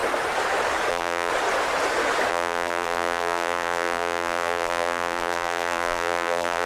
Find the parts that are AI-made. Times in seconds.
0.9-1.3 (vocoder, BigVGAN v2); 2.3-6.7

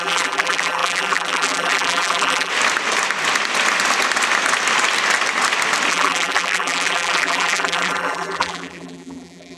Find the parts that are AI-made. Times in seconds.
0.0-2.5 (vocoder, BigVGAN v2); 5.9-9.6

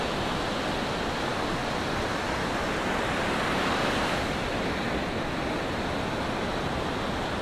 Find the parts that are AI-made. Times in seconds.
none